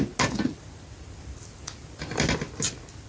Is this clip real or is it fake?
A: real